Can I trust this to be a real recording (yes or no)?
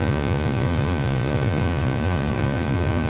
no